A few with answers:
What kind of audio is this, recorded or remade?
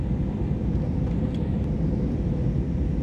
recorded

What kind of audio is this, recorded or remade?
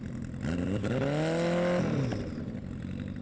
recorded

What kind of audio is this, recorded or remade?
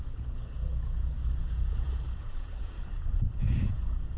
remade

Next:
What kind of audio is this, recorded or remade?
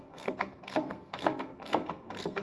remade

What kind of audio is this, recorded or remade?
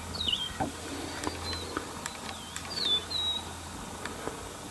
recorded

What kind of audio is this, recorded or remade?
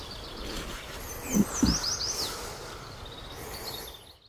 recorded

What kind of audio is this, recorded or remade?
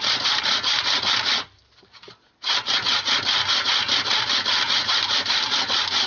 recorded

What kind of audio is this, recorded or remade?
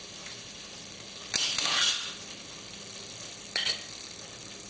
recorded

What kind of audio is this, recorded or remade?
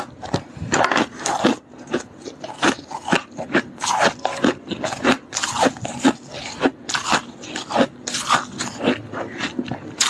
recorded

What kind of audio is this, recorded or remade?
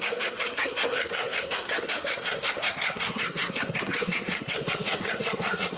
remade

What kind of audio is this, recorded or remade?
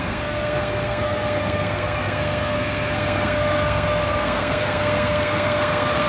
remade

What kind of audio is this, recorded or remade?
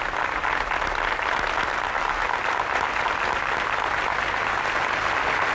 recorded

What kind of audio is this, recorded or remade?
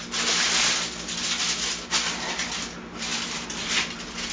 recorded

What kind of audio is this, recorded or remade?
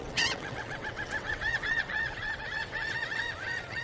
remade